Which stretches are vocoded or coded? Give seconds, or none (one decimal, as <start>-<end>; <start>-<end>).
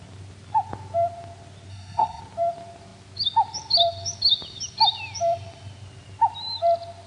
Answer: 1.7-2.2